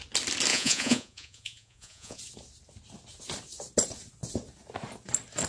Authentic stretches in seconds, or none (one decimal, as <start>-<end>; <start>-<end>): 0.0-0.5; 2.2-5.5